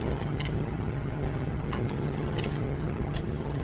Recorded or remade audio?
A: remade